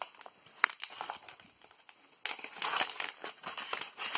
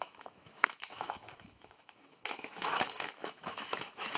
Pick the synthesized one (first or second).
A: second